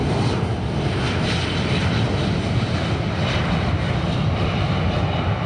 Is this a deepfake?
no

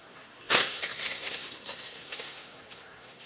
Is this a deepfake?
yes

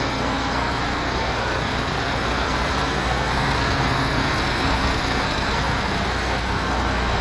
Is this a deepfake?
yes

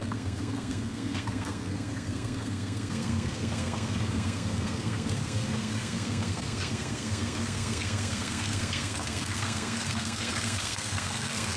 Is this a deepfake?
yes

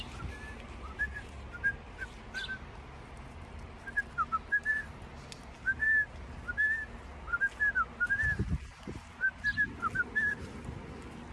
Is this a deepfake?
no